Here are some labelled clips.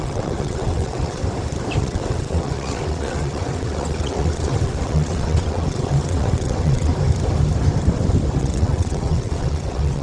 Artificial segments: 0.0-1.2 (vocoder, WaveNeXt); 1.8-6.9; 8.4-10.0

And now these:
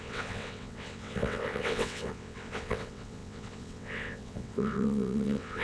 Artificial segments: 0.0-5.6 (vocoder, WaveNeXt)